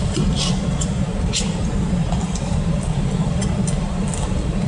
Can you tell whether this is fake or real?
fake